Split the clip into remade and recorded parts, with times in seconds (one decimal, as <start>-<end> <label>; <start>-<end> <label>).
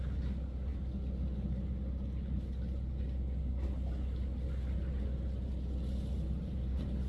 0.0-7.1 recorded